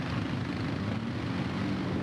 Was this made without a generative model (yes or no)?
yes